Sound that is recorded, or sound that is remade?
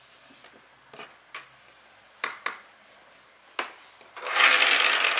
recorded